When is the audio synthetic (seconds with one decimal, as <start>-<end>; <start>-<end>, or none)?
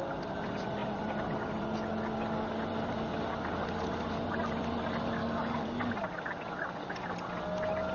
5.2-5.9